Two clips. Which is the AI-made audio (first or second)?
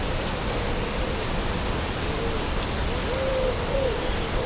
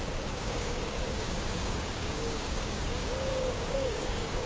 second